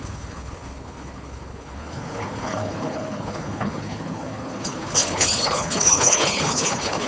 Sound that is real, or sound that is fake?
fake